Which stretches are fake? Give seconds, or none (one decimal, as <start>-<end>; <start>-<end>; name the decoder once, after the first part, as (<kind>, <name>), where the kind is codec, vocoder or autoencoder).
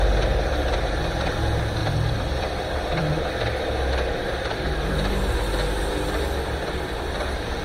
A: 1.8-3.2 (vocoder, BigVGAN v2)